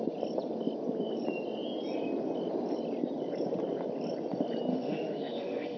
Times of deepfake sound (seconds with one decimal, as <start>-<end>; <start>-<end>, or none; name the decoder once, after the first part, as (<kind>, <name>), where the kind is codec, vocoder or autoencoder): 4.7-5.8 (autoencoder, DAC-VAE)